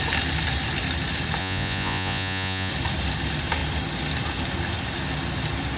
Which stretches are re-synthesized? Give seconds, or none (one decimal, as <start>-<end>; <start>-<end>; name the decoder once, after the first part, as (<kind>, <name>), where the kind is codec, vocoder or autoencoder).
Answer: 1.4-2.7 (vocoder, Vocos)